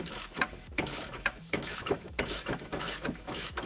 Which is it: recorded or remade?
remade